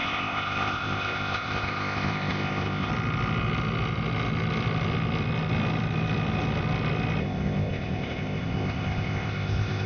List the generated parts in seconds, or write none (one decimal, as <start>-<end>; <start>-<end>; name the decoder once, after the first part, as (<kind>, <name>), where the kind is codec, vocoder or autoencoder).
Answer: 0.0-2.9 (codec, ZipCodec); 7.2-9.9